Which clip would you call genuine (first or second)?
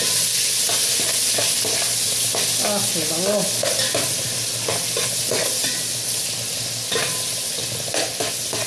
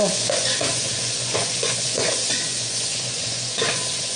first